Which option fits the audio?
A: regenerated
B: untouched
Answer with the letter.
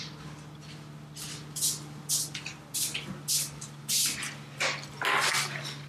B